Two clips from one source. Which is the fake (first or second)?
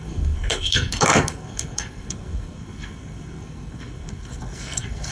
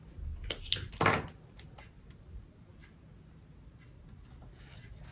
first